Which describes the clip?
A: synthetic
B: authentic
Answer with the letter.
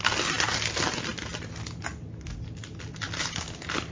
B